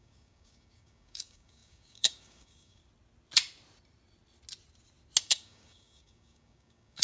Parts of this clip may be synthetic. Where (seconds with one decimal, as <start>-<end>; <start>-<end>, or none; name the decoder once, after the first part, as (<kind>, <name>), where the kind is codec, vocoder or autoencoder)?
0.0-2.8 (codec, DAC); 5.2-7.0